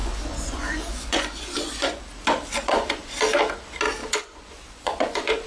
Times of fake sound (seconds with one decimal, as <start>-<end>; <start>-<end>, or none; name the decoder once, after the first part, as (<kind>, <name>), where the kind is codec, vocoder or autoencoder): 0.0-2.0 (vocoder, Vocos); 2.6-3.1; 4.0-5.5

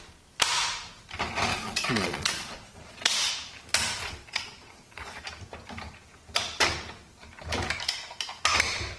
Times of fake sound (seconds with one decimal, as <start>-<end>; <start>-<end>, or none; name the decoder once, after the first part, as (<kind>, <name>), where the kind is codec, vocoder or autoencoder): 1.5-3.3 (vocoder, Vocos); 4.0-5.2